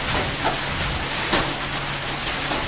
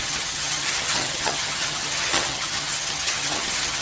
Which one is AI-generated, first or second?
second